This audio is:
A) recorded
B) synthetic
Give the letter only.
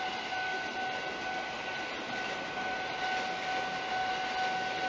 A